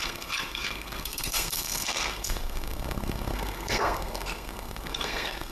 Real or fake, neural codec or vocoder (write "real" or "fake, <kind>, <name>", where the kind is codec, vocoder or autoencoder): fake, codec, SNAC